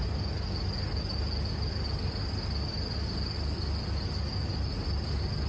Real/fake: real